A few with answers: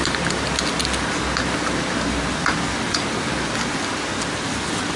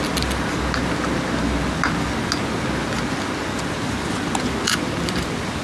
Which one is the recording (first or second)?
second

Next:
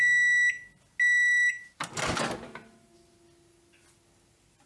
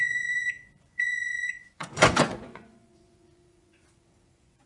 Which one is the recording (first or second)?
first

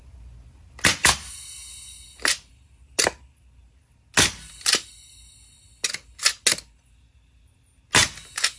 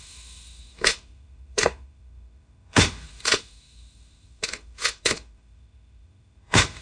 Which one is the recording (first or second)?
first